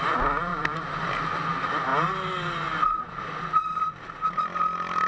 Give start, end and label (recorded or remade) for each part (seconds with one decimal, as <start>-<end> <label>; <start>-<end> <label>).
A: 0.0-0.5 recorded; 0.5-1.0 remade; 1.0-5.1 recorded